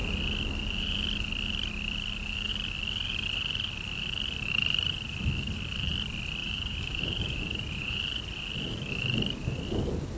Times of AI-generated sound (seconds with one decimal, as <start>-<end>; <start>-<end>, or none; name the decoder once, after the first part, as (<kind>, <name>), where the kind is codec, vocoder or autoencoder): 6.4-8.0 (vocoder, BigVGAN v2)